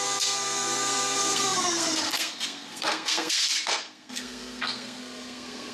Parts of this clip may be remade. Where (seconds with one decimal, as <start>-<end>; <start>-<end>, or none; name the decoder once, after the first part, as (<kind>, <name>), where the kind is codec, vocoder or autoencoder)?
0.0-5.7 (codec, SNAC)